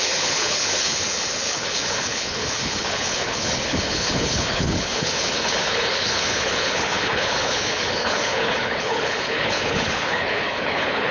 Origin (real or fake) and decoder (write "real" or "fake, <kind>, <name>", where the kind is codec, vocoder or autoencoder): fake, codec, HILCodec